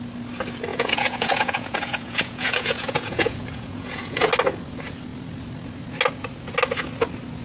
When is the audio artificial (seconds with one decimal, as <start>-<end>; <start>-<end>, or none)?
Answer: 0.7-4.3